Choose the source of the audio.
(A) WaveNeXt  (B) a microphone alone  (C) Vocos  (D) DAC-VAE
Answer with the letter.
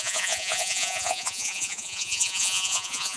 C